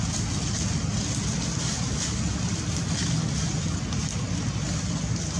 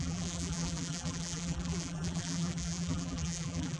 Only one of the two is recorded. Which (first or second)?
first